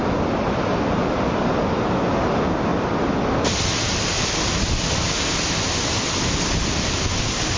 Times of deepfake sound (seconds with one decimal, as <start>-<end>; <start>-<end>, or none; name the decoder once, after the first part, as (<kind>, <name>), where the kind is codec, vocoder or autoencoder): none